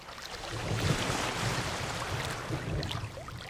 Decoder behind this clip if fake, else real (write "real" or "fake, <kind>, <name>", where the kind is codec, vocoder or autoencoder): real